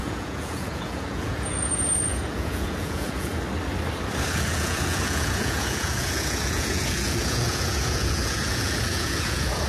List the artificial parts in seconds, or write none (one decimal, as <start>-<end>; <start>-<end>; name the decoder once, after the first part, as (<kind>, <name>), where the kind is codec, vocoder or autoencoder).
0.0-3.3 (vocoder, Vocos); 4.3-9.7